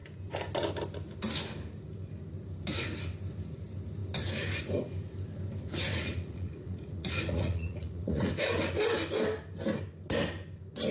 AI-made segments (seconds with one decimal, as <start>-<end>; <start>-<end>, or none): 5.9-8.3